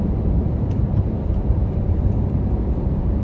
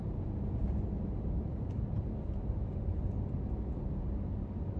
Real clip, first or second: second